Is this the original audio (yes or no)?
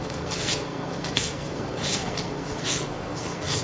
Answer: no